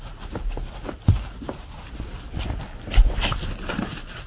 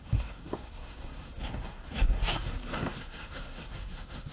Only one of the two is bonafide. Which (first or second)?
first